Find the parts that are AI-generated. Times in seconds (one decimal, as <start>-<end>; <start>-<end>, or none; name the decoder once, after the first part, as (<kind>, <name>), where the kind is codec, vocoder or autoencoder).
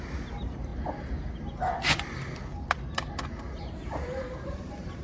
0.0-0.7 (vocoder, BigVGAN v2); 3.4-5.0